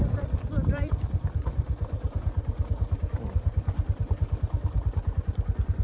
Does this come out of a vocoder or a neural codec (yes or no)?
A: yes